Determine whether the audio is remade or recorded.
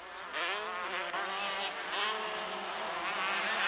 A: recorded